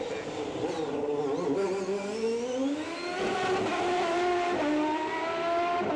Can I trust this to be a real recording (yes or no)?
yes